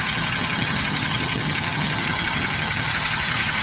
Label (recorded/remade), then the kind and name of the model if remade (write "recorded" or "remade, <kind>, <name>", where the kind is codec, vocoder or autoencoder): remade, vocoder, HiFi-GAN